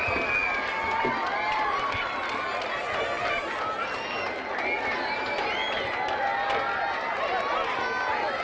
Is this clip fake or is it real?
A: real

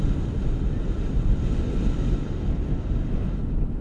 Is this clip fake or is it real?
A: real